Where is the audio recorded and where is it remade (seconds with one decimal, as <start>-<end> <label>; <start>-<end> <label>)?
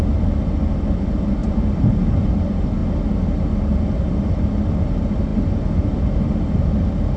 0.0-1.4 recorded; 1.4-2.3 remade; 2.3-7.2 recorded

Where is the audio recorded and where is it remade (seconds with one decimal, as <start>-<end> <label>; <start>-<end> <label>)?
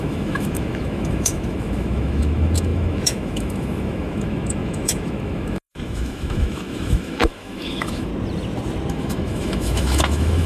0.0-8.1 remade; 8.1-8.9 recorded; 8.9-10.5 remade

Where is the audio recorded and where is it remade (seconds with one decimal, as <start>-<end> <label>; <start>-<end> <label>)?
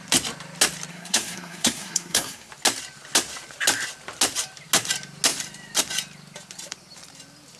0.0-0.9 recorded; 0.9-2.5 remade; 2.5-7.6 recorded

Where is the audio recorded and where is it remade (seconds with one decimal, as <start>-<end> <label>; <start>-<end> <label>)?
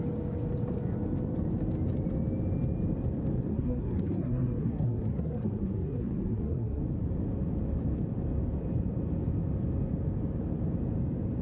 0.0-3.5 recorded; 3.5-6.8 remade; 6.8-11.4 recorded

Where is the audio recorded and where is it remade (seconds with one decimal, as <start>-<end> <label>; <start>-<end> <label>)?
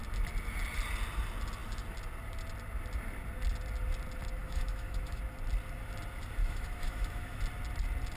0.0-4.4 recorded; 4.4-5.2 remade; 5.2-6.4 recorded; 6.4-7.4 remade; 7.4-8.2 recorded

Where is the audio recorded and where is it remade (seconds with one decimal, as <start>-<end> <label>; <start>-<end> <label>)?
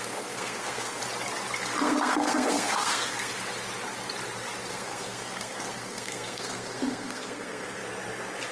0.0-1.0 remade; 1.0-1.8 recorded; 1.8-3.3 remade; 3.3-4.7 recorded; 4.7-7.8 remade; 7.8-8.5 recorded